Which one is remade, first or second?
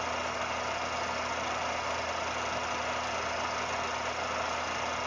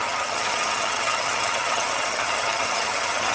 second